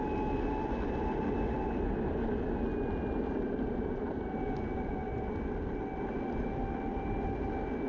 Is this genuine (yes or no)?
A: yes